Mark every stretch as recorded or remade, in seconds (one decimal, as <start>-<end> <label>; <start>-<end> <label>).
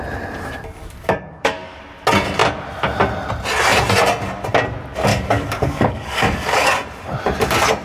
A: 0.0-0.8 recorded; 0.8-1.8 remade; 1.8-5.1 recorded; 5.1-6.7 remade; 6.7-7.8 recorded